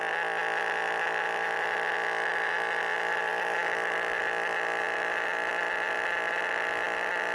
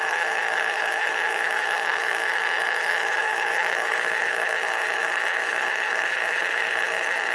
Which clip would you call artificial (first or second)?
second